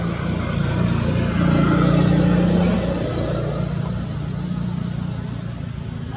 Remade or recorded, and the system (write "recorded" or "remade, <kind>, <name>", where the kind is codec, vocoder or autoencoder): recorded